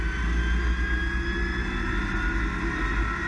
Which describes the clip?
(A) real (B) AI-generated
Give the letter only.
A